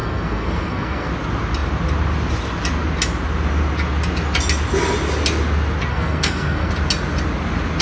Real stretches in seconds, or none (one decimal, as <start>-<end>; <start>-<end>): 1.1-5.9; 6.7-7.8